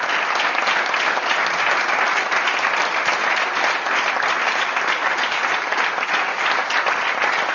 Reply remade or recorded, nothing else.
recorded